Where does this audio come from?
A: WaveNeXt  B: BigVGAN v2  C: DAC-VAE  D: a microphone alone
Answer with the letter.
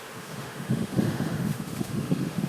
C